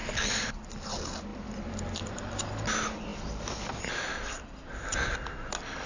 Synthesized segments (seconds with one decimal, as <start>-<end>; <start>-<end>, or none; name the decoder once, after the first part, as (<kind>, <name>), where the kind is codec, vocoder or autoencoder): 0.0-0.6 (vocoder, BigVGAN v2); 1.3-2.5; 3.1-3.8

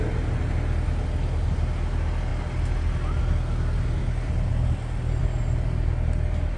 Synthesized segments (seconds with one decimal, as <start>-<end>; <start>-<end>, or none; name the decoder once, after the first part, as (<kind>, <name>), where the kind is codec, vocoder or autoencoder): none

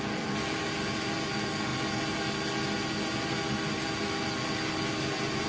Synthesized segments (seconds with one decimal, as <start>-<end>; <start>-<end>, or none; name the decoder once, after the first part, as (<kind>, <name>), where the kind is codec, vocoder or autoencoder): none

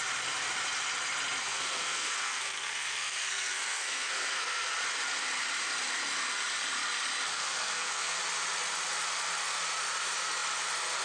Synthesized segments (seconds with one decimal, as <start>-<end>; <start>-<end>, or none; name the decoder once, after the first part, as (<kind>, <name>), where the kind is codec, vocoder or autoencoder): 1.4-4.7 (codec, SNAC); 7.3-8.2